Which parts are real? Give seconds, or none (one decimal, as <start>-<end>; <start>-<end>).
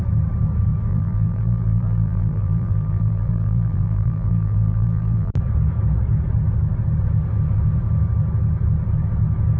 0.0-0.9; 5.4-9.6